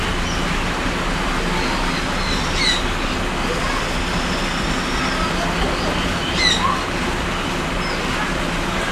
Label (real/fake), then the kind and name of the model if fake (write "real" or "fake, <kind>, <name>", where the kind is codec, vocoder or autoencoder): real